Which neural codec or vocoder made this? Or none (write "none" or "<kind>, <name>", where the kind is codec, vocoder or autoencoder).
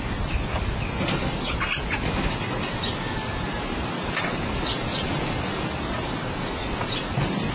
none